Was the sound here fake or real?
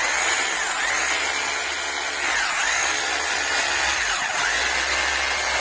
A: real